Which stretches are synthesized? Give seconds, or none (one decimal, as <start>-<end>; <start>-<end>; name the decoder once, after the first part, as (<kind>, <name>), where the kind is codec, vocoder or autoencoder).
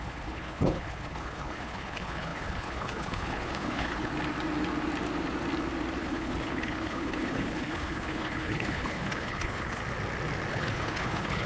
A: 0.0-4.1 (codec, HILCodec); 6.0-9.8; 10.5-11.5